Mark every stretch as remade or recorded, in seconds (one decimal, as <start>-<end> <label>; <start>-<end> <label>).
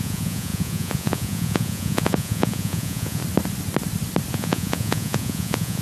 0.0-3.2 remade; 3.2-4.3 recorded; 4.3-5.8 remade